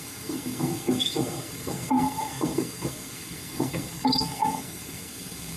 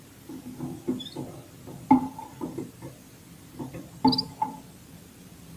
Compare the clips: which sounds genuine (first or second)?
second